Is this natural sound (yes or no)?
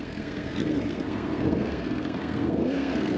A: no